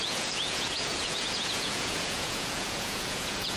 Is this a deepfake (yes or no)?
yes